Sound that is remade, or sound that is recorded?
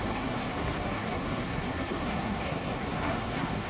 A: remade